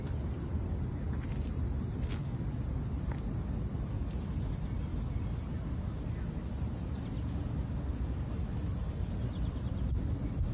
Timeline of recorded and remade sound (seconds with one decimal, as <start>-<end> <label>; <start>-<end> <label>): 0.0-10.5 recorded